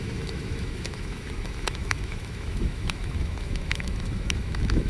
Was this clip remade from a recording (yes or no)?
yes